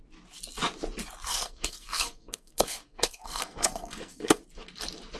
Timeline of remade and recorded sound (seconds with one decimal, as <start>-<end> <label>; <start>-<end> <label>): 0.0-1.3 recorded; 1.3-4.4 remade; 4.4-5.2 recorded